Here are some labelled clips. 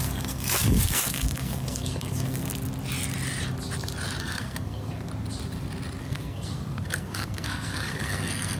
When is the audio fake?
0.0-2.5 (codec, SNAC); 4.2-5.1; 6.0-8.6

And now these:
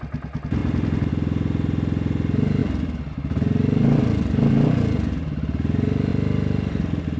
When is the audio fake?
none

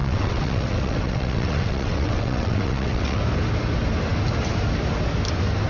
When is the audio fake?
0.0-3.2 (vocoder, WaveNeXt)

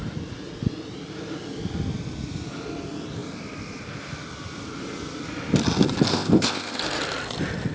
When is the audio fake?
6.1-6.8 (codec, ZipCodec)